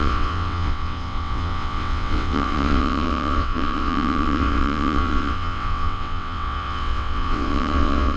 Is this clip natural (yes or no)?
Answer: no